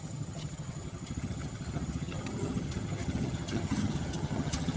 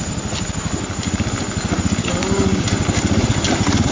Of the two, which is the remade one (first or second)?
first